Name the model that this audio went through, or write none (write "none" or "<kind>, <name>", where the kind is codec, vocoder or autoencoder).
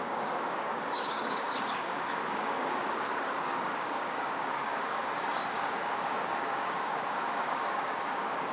codec, DAC